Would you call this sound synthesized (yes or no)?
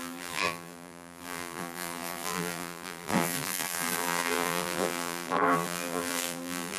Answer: yes